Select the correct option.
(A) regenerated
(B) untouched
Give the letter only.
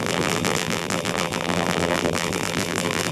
A